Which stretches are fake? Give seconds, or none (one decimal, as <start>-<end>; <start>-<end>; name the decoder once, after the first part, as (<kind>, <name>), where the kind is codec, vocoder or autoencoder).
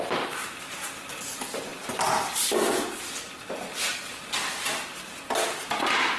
0.4-0.9 (vocoder, BigVGAN v2)